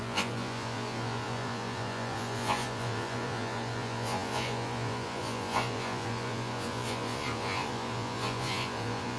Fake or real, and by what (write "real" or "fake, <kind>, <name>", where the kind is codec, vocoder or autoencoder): fake, vocoder, Vocos